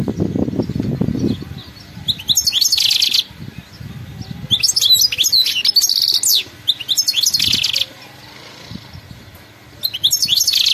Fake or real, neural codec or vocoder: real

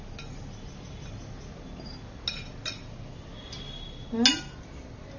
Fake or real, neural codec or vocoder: real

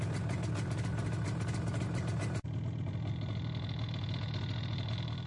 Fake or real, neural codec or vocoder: real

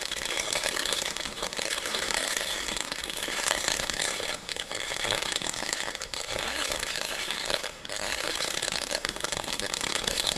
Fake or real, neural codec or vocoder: fake, codec, SNAC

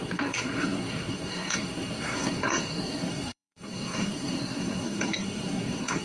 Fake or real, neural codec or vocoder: fake, codec, SNAC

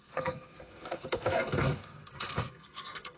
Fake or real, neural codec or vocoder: fake, codec, SNAC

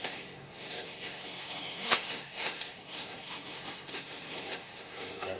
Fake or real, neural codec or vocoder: fake, codec, SNAC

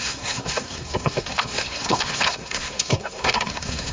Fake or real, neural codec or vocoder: fake, codec, SNAC